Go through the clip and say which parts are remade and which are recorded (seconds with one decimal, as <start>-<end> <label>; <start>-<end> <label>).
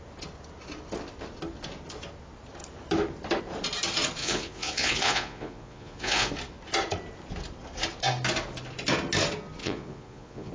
0.0-4.2 recorded; 4.2-6.3 remade; 6.3-9.6 recorded; 9.6-10.5 remade